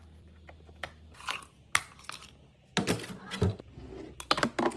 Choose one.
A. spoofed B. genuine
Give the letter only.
B